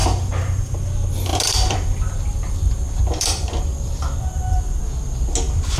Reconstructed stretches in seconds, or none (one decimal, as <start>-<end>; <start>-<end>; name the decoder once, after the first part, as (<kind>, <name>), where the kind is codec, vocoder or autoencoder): 1.3-4.8 (vocoder, BigVGAN v2)